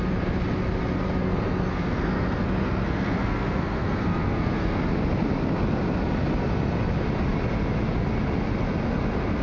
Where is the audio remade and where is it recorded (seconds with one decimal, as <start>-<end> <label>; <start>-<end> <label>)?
0.0-1.2 recorded; 1.2-4.8 remade; 4.8-9.4 recorded